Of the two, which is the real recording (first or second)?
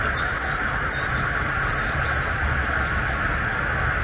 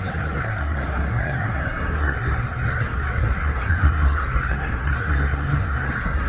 first